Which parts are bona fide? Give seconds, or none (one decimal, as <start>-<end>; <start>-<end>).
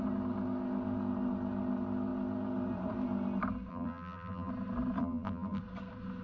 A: 0.0-3.7; 4.5-5.0; 5.6-6.2